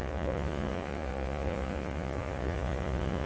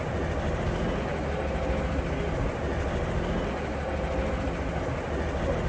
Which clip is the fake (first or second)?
first